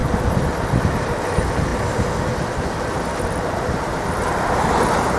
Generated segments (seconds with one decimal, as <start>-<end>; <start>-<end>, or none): none